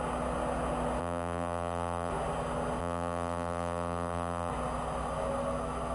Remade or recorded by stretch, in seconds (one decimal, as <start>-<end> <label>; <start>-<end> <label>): 0.0-1.0 recorded; 1.0-2.1 remade; 2.1-2.8 recorded; 2.8-4.5 remade; 4.5-5.9 recorded